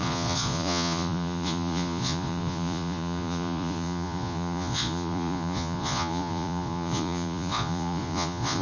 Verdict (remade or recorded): remade